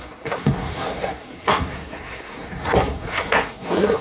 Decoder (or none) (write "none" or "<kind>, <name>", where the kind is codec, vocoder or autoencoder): codec, SNAC